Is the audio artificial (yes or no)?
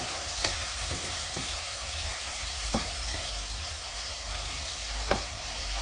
yes